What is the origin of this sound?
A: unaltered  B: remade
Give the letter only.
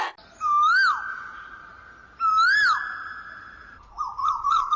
A